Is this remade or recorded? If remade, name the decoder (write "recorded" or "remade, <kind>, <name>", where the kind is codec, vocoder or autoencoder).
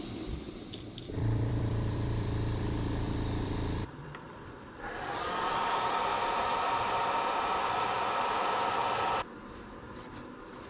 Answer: remade, vocoder, BigVGAN v2